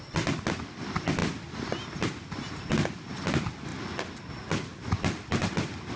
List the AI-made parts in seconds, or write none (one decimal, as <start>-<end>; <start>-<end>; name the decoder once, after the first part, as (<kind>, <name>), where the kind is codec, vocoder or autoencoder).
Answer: none